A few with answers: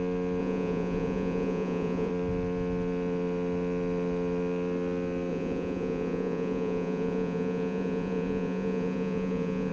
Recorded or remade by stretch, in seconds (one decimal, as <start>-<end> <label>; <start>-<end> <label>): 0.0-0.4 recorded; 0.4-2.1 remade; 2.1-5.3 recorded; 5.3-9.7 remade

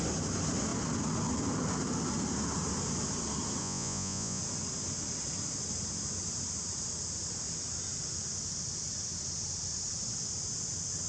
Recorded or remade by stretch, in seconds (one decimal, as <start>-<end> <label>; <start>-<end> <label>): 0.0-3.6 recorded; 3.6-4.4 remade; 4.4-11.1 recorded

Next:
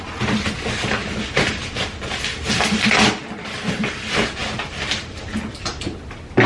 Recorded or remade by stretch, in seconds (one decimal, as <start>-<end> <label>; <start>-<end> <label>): 0.0-6.5 recorded

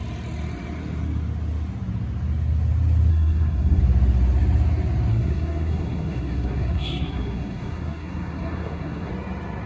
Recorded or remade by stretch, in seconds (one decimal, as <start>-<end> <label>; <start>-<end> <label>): 0.0-3.1 recorded; 3.1-3.8 remade; 3.8-5.1 recorded; 5.1-9.1 remade; 9.1-9.7 recorded